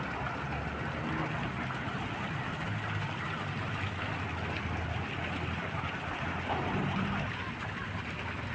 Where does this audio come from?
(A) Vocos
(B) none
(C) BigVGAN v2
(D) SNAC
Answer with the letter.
B